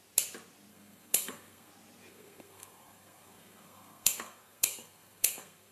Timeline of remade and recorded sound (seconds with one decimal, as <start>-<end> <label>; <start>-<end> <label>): 0.0-0.7 recorded; 0.7-1.7 remade; 1.7-2.1 recorded; 2.1-5.7 remade